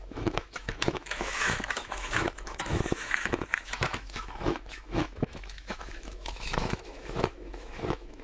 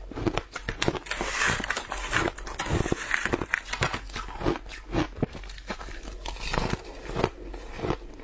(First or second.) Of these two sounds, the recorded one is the second